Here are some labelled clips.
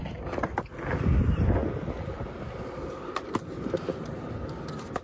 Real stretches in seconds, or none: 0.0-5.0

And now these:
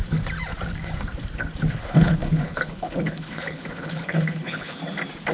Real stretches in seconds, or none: 0.0-1.7; 4.8-5.3

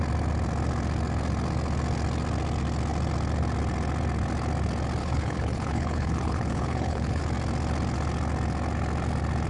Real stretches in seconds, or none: 0.0-5.0; 7.2-9.5

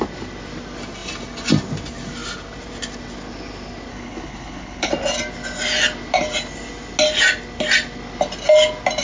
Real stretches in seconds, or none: 0.0-3.9; 4.9-9.0

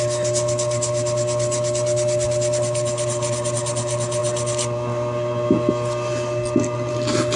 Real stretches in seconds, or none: 0.0-7.4